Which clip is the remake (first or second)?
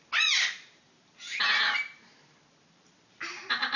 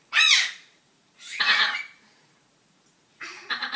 second